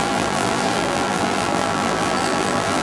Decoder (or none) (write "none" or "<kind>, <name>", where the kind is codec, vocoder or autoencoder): vocoder, BigVGAN v2